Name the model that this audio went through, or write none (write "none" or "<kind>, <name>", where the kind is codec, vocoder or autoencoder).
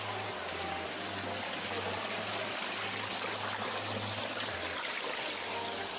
none